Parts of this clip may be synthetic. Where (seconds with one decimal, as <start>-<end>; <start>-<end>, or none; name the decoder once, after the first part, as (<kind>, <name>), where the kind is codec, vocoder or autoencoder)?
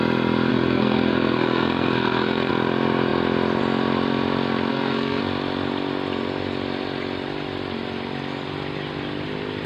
0.5-2.5 (codec, SNAC); 4.7-5.2